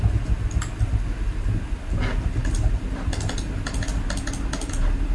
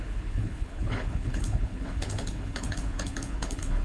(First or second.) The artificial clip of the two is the second